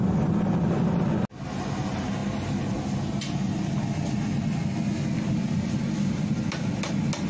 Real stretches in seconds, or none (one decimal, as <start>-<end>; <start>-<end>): 0.0-7.3